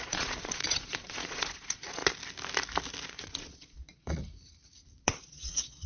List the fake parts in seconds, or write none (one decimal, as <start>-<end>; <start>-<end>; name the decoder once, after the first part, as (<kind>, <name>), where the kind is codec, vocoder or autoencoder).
0.0-2.0 (vocoder, Vocos); 3.2-4.2; 4.9-5.9